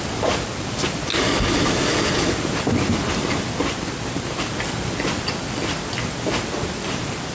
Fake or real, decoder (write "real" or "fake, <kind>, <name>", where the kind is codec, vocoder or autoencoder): real